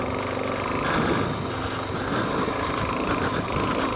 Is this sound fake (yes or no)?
no